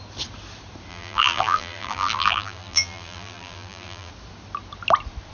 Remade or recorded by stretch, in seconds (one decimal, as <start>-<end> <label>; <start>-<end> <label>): 0.0-0.9 recorded; 0.9-4.1 remade; 4.1-5.3 recorded